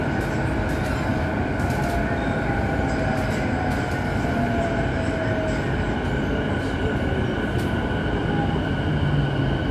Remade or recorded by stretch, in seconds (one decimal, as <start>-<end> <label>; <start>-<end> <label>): 0.0-1.1 recorded; 1.1-1.7 remade; 1.7-9.7 recorded